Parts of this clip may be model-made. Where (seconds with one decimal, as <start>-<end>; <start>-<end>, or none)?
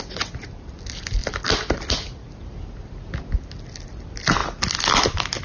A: none